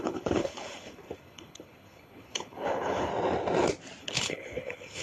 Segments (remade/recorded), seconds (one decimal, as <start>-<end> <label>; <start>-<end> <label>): 0.0-3.1 remade; 3.1-4.0 recorded; 4.0-5.0 remade